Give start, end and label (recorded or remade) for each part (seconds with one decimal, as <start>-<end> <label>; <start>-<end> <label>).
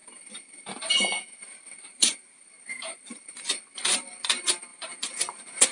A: 0.0-3.4 remade; 3.4-4.7 recorded; 4.7-5.7 remade